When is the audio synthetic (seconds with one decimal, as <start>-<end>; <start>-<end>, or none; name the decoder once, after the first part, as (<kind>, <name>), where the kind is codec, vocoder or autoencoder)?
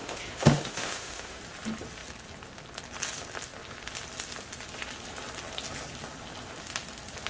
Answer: 0.0-1.4 (autoencoder, DAC-VAE)